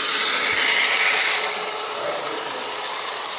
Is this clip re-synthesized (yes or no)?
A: no